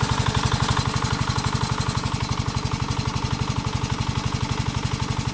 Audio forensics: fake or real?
real